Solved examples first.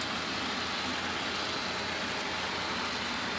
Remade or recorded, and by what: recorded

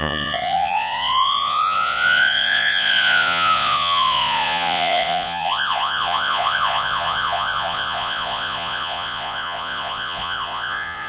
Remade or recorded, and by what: remade, vocoder, Vocos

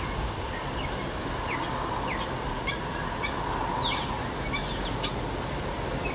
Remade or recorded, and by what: recorded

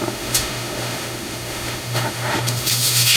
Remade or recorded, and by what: remade, autoencoder, DAC-VAE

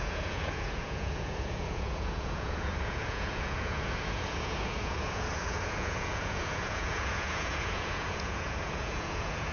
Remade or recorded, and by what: remade, vocoder, Vocos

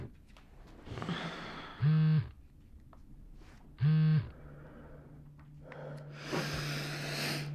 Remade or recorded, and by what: recorded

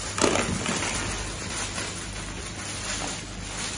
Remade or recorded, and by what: recorded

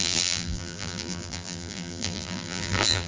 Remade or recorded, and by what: remade, vocoder, BigVGAN v2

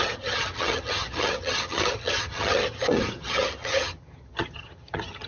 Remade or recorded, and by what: remade, vocoder, HiFi-GAN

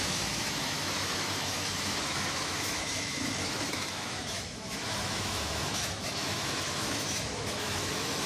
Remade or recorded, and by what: remade, autoencoder, DAC-VAE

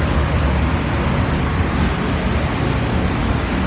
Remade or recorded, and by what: recorded